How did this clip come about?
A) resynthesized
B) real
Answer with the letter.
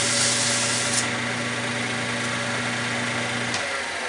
B